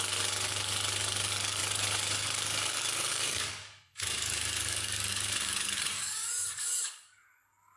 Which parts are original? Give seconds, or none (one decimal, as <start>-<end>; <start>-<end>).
none